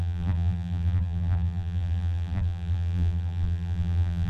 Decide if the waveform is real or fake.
fake